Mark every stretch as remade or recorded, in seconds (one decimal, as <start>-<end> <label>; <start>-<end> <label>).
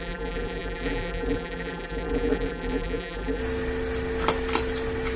0.0-3.4 remade; 3.4-5.2 recorded